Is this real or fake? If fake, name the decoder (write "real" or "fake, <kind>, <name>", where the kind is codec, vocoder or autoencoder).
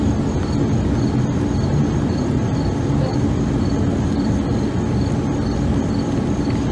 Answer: real